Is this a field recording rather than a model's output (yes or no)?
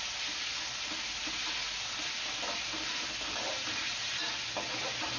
yes